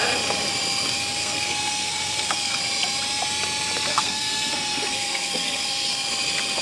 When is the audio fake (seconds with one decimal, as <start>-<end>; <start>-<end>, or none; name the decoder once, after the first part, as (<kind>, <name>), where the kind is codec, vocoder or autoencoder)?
1.2-2.6 (codec, SNAC); 3.9-6.1